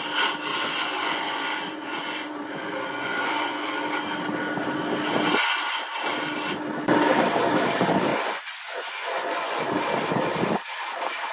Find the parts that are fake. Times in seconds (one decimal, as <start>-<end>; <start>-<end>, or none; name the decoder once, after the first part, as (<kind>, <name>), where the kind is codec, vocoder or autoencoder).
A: 0.5-3.8 (vocoder, Vocos); 8.1-9.6